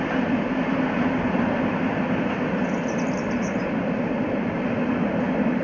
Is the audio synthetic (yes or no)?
no